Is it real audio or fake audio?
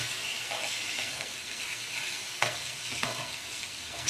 fake